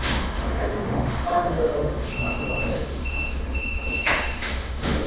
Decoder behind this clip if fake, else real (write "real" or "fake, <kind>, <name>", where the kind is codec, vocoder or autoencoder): fake, autoencoder, DAC-VAE